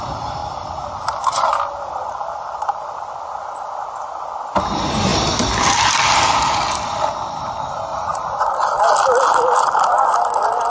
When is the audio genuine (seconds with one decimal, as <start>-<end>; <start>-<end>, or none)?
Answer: 0.0-7.9; 8.4-10.7